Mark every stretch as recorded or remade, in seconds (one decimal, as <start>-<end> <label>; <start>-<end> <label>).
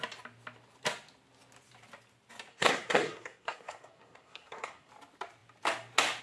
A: 0.0-2.5 recorded; 2.5-4.9 remade; 4.9-6.2 recorded